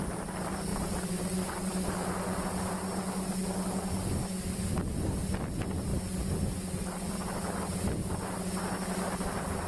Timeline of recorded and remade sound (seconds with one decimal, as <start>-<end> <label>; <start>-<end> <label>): 0.0-0.7 recorded; 0.7-1.9 remade; 1.9-9.7 recorded